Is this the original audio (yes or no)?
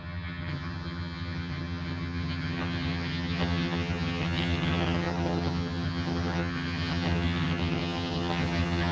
no